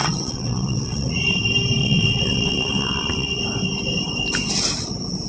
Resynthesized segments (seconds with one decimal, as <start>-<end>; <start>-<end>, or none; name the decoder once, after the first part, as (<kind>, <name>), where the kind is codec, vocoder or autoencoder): 0.0-1.1 (vocoder, WaveNeXt); 1.8-3.4